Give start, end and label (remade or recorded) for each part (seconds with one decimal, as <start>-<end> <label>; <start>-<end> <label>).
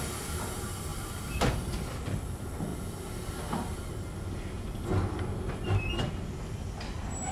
0.0-0.9 recorded; 0.9-2.0 remade; 2.0-2.7 recorded; 2.7-3.9 remade; 3.9-7.3 recorded